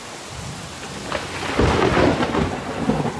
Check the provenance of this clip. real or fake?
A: real